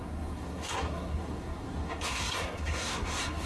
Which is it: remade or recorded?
remade